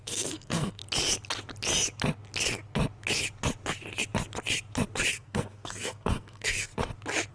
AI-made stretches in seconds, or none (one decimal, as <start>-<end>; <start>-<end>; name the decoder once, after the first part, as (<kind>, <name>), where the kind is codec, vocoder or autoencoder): 0.0-0.8 (codec, SNAC); 5.1-6.7